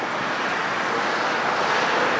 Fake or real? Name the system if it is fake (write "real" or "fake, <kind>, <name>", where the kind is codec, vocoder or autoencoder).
real